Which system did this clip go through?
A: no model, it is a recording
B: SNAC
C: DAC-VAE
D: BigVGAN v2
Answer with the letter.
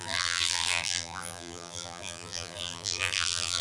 D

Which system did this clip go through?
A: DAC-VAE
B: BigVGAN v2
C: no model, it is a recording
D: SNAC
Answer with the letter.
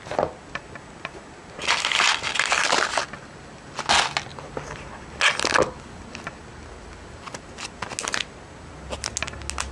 C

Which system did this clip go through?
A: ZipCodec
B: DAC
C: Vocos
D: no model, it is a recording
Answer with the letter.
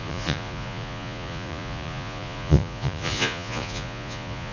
C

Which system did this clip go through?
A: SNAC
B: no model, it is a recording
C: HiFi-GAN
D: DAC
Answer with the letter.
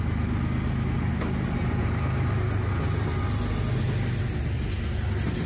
B